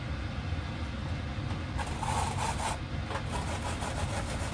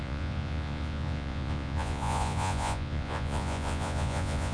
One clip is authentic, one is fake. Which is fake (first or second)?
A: second